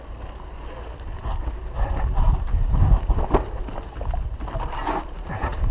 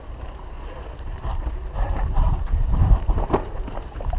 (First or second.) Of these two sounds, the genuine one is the first